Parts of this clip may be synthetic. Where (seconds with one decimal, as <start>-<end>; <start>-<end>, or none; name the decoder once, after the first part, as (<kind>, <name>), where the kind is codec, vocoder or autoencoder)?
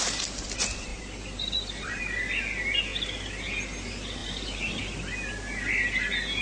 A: 0.9-2.0 (vocoder, BigVGAN v2); 4.2-4.8